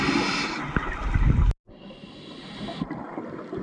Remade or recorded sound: recorded